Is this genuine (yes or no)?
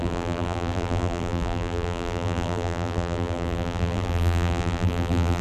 no